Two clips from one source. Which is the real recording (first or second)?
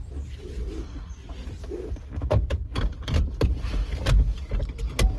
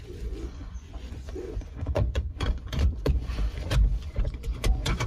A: first